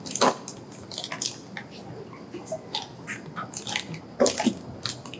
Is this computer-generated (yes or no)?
no